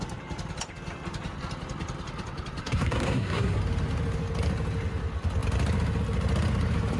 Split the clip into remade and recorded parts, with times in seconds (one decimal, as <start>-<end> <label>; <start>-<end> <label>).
0.0-2.6 recorded; 2.6-3.6 remade; 3.6-7.0 recorded